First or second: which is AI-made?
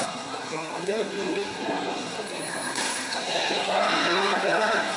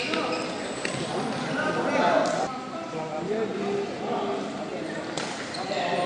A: first